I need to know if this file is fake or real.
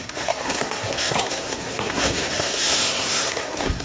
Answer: fake